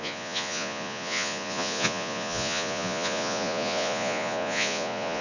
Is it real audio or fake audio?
fake